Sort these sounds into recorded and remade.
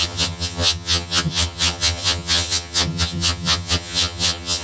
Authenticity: remade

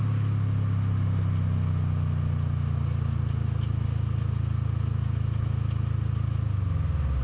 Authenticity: recorded